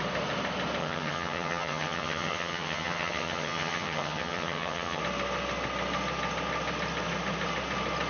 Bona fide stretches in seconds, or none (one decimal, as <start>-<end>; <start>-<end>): 0.0-0.8; 5.0-8.1